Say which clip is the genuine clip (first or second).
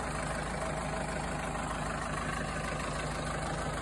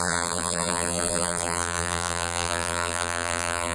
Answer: first